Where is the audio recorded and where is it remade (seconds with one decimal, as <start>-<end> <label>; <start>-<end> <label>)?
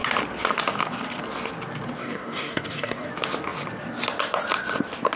0.0-2.0 recorded; 2.0-3.1 remade; 3.1-5.2 recorded